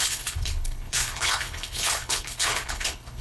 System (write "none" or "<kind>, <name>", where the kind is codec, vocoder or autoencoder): codec, HILCodec